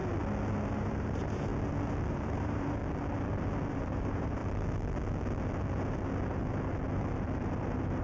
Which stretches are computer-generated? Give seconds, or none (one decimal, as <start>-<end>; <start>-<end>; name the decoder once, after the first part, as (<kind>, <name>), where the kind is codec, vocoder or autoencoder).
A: 0.7-1.5 (vocoder, BigVGAN v2); 2.1-2.8; 3.7-4.4